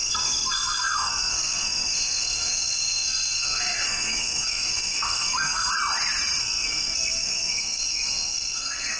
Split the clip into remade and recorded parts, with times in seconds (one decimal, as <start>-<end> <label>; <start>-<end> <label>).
0.0-5.7 remade; 5.7-6.4 recorded; 6.4-9.0 remade